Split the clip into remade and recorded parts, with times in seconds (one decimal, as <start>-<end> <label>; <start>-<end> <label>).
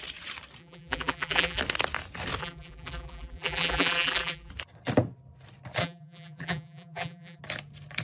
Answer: 0.0-0.6 recorded; 0.6-1.6 remade; 1.6-2.4 recorded; 2.4-4.5 remade; 4.5-5.8 recorded; 5.8-7.4 remade; 7.4-8.0 recorded